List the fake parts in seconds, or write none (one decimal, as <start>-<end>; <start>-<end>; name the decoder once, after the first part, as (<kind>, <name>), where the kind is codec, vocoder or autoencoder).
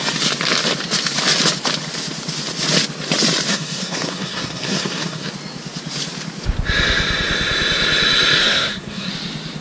3.5-5.3 (codec, SNAC); 8.4-9.1